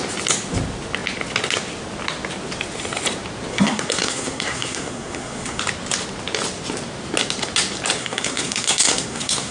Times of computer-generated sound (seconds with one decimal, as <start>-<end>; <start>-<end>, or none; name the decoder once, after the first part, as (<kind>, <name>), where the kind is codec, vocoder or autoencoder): 3.5-5.6 (codec, SNAC); 8.0-9.5